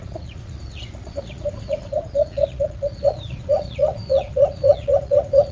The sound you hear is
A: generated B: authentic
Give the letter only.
A